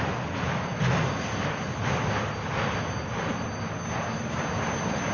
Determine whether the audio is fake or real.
real